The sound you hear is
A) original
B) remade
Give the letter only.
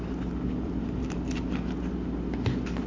A